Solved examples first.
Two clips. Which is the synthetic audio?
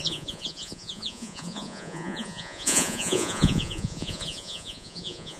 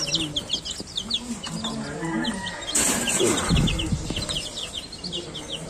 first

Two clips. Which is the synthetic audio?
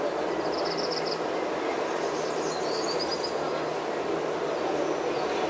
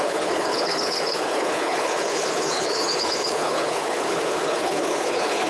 second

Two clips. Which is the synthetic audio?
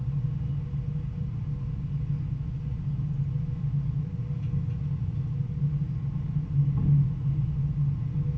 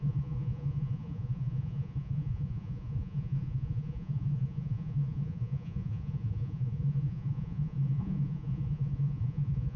second